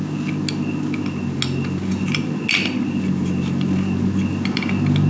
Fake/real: real